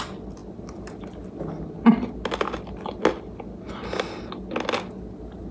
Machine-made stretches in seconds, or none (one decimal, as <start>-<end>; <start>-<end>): none